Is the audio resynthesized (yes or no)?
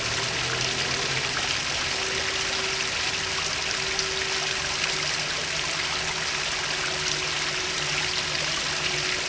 no